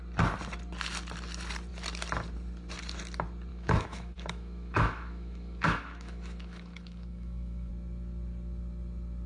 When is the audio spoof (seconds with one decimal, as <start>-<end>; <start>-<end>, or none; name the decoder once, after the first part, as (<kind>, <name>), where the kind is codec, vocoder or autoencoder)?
3.5-7.7 (autoencoder, DAC-VAE)